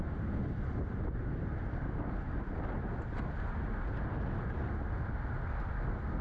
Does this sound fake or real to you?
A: real